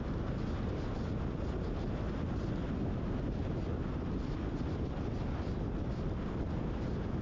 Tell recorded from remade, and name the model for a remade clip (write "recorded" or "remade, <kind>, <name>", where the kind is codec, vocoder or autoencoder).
recorded